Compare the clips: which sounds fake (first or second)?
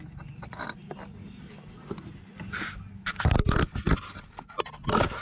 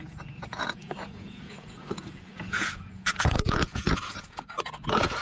second